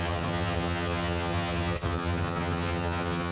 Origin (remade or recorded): remade